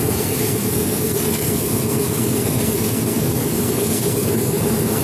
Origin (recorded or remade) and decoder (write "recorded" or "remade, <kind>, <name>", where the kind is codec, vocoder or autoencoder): remade, codec, SNAC